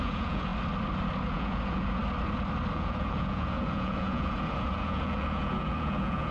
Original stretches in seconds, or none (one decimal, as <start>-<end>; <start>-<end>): 0.5-1.3; 2.0-2.7